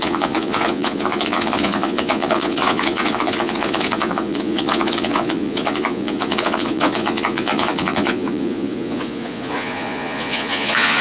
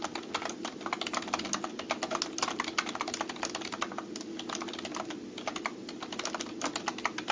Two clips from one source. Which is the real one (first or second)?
second